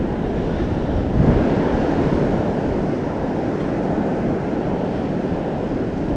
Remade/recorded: recorded